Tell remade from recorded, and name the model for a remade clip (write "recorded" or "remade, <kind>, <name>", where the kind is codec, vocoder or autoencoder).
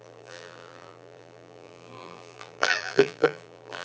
remade, vocoder, BigVGAN v2